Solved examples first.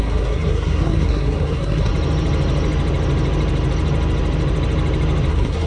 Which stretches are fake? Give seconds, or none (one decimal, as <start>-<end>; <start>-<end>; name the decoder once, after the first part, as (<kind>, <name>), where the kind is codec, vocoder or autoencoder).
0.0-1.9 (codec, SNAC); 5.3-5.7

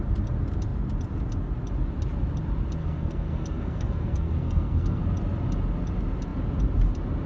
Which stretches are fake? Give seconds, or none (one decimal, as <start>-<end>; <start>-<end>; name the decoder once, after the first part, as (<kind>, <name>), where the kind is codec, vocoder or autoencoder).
2.8-5.0 (codec, SNAC)

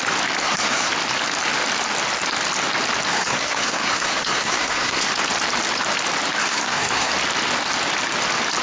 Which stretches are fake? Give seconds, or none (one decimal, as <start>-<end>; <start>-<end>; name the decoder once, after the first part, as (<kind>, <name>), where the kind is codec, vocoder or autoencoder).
0.4-0.9 (codec, SNAC); 3.1-5.1; 6.4-7.1